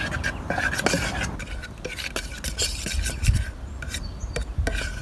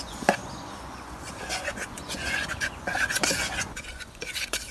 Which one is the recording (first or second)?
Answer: first